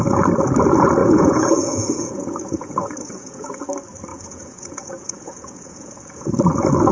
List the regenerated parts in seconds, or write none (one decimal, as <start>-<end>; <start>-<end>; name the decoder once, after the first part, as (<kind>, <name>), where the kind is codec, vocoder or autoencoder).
1.0-3.6 (vocoder, Vocos); 4.1-6.3